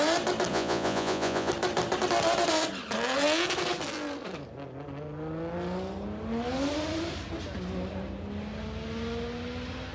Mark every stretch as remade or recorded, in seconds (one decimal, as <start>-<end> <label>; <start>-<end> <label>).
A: 0.0-0.5 recorded; 0.5-1.5 remade; 1.5-9.9 recorded